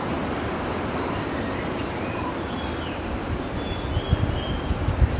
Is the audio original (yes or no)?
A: yes